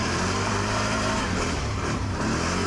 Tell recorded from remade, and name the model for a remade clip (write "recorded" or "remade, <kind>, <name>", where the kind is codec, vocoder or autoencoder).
remade, vocoder, BigVGAN v2